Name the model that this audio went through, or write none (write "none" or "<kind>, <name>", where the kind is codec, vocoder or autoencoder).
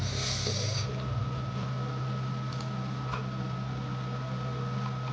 none